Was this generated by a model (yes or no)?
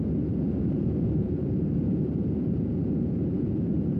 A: yes